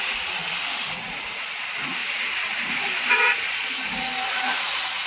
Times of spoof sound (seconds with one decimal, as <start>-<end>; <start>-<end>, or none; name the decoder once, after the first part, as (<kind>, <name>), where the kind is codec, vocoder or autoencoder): 0.0-3.6 (vocoder, Vocos); 4.3-5.1